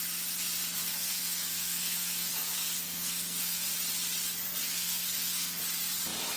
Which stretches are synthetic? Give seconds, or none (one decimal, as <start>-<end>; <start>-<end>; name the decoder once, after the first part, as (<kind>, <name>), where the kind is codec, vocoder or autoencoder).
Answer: 0.8-3.7 (codec, SNAC); 4.6-5.6